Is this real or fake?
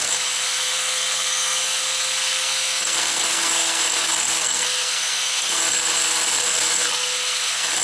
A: fake